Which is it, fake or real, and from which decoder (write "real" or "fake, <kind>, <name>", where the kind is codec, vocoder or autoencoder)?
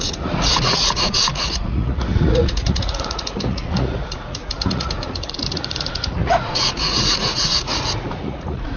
fake, vocoder, Vocos